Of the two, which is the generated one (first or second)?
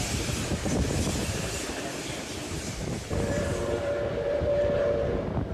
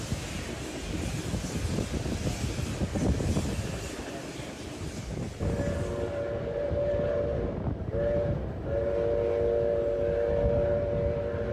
first